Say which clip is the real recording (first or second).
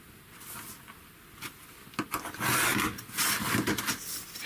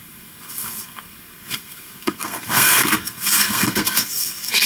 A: first